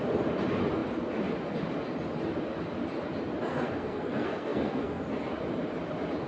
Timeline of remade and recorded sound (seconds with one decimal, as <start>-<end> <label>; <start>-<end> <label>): 0.0-3.5 recorded; 3.5-5.0 remade; 5.0-6.3 recorded